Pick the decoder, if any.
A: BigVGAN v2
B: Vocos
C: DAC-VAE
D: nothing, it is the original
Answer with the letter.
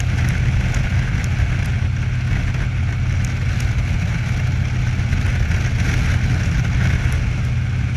D